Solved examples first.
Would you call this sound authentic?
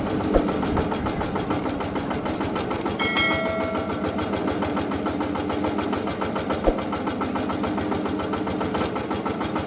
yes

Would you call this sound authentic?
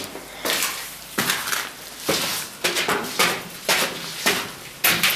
yes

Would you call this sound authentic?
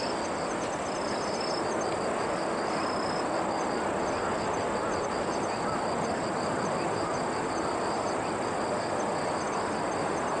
yes